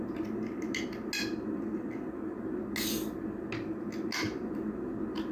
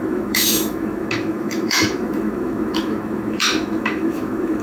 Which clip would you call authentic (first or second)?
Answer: first